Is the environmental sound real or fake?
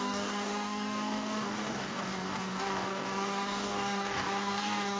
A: fake